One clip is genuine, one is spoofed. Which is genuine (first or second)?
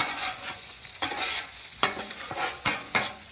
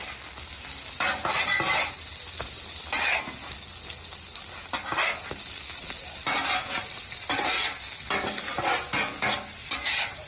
second